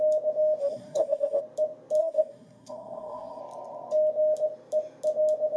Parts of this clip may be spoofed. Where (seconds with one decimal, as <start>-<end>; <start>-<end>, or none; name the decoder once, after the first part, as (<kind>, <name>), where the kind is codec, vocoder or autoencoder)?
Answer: 0.6-1.4 (codec, SNAC); 2.0-3.4